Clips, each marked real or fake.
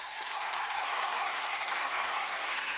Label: fake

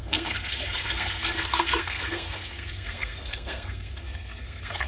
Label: fake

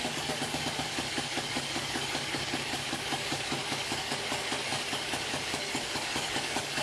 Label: fake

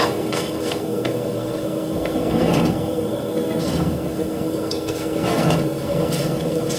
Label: fake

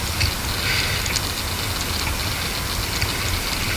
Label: real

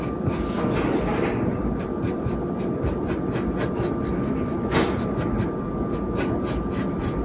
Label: real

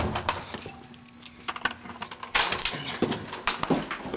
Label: real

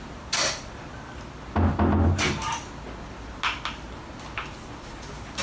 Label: real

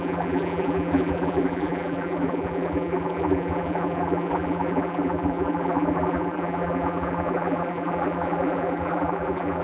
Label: fake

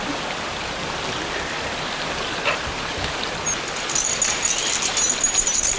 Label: real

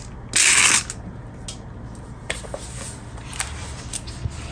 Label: real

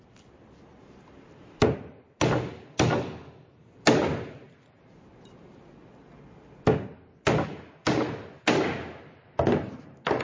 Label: real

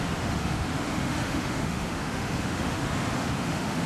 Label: fake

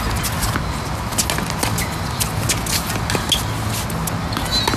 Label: real